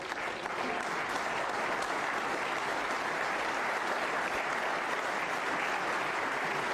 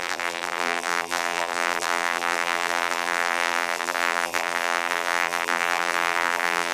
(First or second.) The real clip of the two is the first